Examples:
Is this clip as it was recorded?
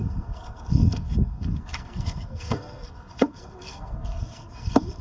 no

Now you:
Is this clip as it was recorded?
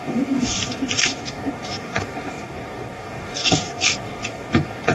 no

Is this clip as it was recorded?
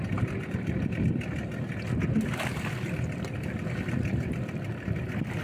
yes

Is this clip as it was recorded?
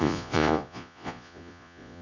no